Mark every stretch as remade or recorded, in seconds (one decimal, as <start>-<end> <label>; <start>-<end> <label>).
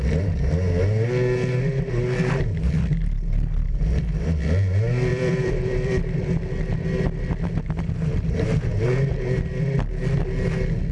0.0-5.1 recorded; 5.1-5.9 remade; 5.9-10.9 recorded